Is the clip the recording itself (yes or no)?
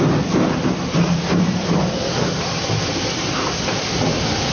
yes